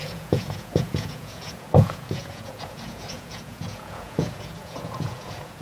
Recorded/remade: remade